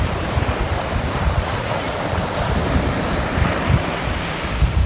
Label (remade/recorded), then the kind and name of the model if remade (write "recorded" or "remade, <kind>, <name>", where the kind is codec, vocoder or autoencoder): remade, vocoder, BigVGAN v2